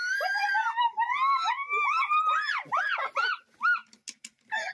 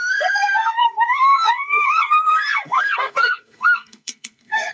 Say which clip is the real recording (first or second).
first